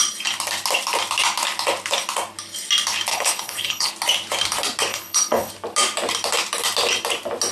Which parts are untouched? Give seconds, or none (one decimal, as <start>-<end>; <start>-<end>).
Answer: 0.0-3.1; 3.9-4.9; 5.5-7.5